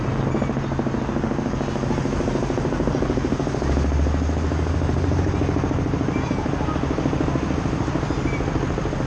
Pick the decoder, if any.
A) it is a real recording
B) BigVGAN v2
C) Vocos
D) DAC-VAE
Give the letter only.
A